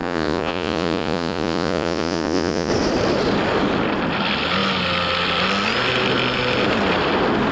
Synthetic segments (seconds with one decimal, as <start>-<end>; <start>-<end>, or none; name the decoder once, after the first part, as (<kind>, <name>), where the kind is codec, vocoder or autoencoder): 0.0-2.7 (vocoder, Vocos)